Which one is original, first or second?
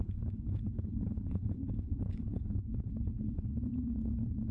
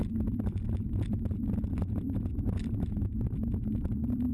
second